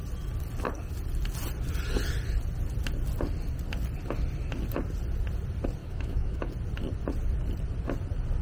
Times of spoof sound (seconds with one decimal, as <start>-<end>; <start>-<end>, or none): 5.8-6.5